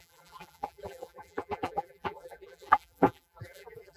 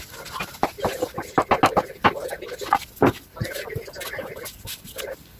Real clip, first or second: second